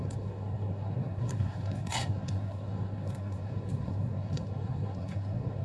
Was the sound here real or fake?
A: fake